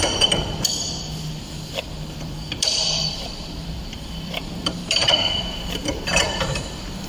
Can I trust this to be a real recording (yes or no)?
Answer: no